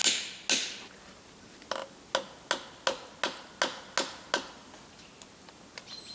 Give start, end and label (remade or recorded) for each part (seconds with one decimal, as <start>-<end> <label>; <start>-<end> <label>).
0.0-6.1 recorded